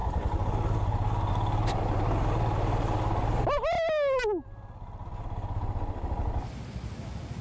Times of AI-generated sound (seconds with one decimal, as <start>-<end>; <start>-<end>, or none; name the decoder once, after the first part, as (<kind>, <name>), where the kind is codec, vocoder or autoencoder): none